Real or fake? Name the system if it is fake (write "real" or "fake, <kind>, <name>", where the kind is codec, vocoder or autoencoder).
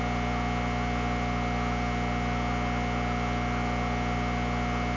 real